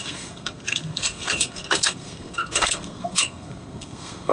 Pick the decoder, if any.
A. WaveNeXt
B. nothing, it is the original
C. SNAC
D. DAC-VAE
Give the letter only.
C